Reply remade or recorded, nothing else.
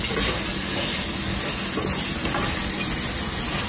recorded